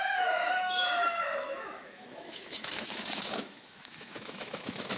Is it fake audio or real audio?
fake